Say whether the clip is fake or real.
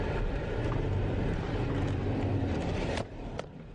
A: real